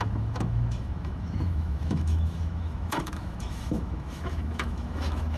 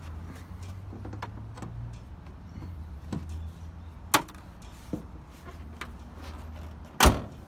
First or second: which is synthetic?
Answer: first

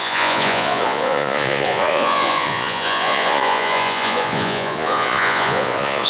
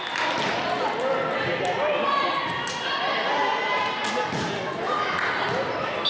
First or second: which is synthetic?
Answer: first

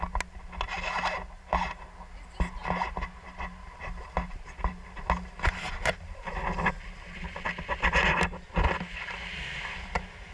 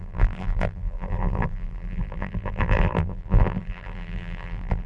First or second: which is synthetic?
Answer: second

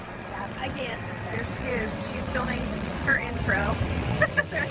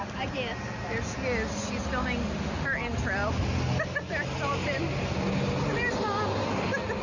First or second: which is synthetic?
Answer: first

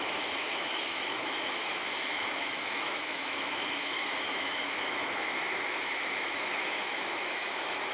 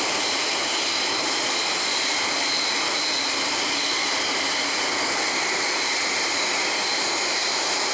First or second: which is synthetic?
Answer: first